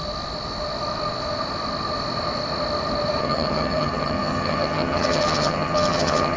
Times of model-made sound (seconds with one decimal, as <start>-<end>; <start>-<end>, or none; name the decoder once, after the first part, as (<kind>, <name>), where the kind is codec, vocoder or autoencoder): 3.2-6.4 (vocoder, HiFi-GAN)